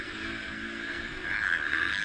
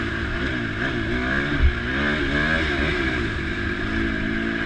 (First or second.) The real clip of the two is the second